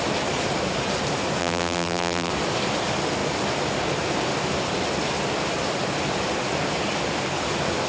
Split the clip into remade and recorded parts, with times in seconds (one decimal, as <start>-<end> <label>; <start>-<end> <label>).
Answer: 0.0-1.4 recorded; 1.4-2.3 remade; 2.3-7.9 recorded

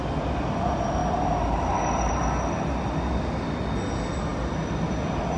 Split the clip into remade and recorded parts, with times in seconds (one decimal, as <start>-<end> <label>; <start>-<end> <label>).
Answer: 0.0-5.4 recorded

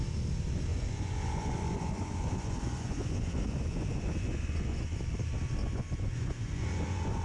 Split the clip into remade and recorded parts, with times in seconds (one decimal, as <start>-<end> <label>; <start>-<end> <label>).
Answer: 0.0-0.7 recorded; 0.7-5.0 remade; 5.0-5.6 recorded; 5.6-7.2 remade

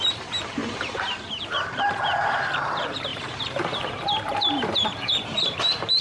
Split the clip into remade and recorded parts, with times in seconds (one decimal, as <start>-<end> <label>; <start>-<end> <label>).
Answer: 0.0-0.6 remade; 0.6-1.4 recorded; 1.4-6.0 remade